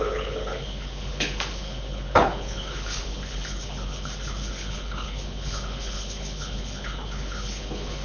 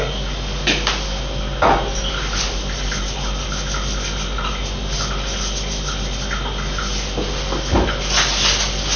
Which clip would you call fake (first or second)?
first